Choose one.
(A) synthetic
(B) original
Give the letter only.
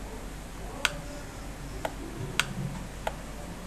B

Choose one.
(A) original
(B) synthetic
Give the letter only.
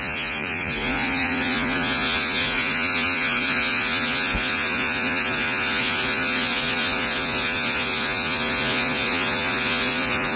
B